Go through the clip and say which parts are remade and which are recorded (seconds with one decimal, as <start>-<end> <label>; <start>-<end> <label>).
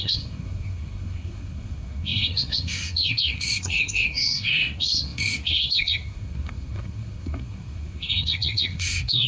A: 0.0-9.3 remade